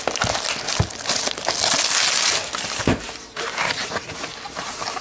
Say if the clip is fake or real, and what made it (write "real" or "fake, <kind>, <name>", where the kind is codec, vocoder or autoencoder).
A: real